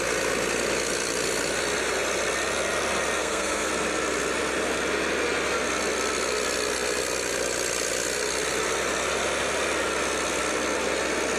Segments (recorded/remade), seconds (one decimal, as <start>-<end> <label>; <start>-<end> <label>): 0.0-3.2 recorded; 3.2-3.7 remade; 3.7-11.4 recorded